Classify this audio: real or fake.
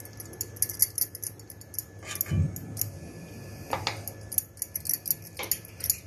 real